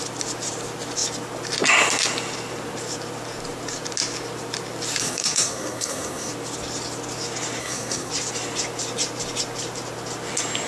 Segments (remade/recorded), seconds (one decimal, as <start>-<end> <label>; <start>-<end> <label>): 0.0-5.0 recorded; 5.0-6.3 remade; 6.3-7.6 recorded; 7.6-8.1 remade; 8.1-10.7 recorded